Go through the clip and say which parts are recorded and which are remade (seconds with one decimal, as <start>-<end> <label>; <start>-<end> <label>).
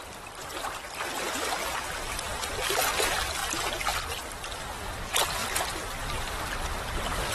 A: 0.0-1.2 remade; 1.2-5.4 recorded; 5.4-6.3 remade; 6.3-7.3 recorded